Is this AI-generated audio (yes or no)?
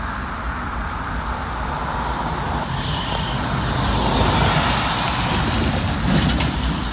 no